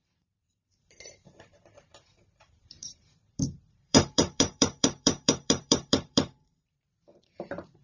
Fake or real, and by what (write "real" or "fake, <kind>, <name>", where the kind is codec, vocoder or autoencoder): fake, vocoder, BigVGAN v2